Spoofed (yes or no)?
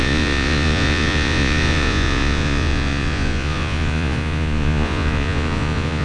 yes